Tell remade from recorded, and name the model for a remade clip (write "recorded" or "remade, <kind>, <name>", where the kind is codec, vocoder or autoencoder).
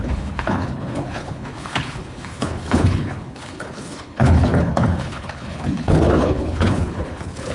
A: remade, codec, HILCodec